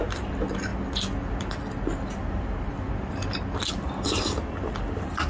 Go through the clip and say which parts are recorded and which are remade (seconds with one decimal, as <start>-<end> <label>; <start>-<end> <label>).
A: 0.0-5.3 recorded

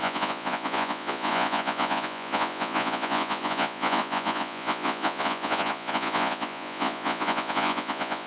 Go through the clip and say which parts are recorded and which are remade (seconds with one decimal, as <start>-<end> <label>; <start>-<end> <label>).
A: 0.0-8.3 remade

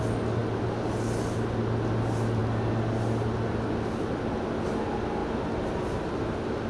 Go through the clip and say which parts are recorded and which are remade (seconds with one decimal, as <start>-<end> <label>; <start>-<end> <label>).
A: 0.0-6.7 recorded

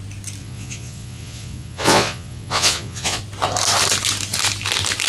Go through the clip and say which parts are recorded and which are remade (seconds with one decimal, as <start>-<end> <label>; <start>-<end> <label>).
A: 0.0-0.4 recorded; 0.4-3.2 remade; 3.2-5.1 recorded

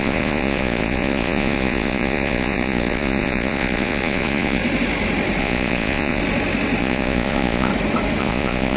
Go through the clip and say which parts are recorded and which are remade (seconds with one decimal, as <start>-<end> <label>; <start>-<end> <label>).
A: 0.0-4.6 remade; 4.6-5.4 recorded; 5.4-6.2 remade; 6.2-6.8 recorded; 6.8-7.7 remade; 7.7-8.2 recorded; 8.2-8.8 remade

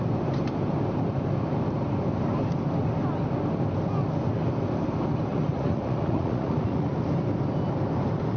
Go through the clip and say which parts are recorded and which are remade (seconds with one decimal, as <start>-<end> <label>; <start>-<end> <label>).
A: 0.0-5.3 recorded; 5.3-6.9 remade; 6.9-8.4 recorded

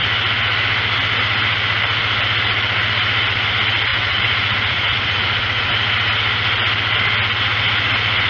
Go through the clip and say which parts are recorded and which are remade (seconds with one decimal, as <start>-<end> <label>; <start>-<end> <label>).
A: 0.0-3.9 recorded; 3.9-5.7 remade; 5.7-8.3 recorded

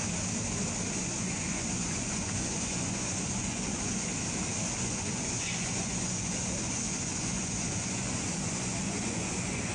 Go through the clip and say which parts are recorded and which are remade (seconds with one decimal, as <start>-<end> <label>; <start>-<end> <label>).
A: 0.0-1.0 recorded; 1.0-4.1 remade; 4.1-4.8 recorded; 4.8-9.7 remade